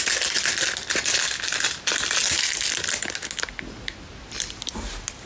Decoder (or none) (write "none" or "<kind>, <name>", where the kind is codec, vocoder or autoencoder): none